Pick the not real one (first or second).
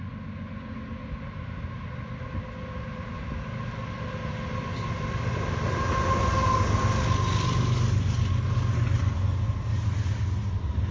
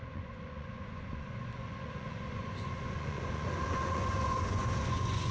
second